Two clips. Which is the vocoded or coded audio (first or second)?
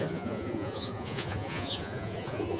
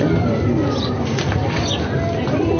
first